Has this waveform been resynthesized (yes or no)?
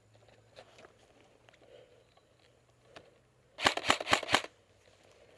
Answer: no